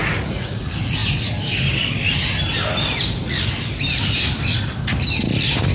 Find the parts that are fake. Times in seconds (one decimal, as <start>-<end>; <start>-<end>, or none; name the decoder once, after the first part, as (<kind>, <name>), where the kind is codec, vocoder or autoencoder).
0.0-0.5 (vocoder, Vocos)